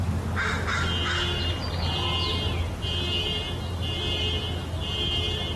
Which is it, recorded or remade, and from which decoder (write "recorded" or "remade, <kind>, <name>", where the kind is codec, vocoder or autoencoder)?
recorded